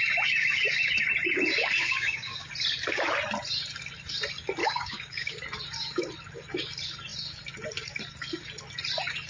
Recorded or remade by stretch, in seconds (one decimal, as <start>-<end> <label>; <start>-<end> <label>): 0.0-1.8 recorded; 1.8-2.5 remade; 2.5-4.6 recorded; 4.6-5.4 remade; 5.4-9.3 recorded